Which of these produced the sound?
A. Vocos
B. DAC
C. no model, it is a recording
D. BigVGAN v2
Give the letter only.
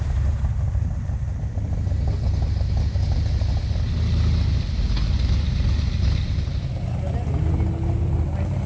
C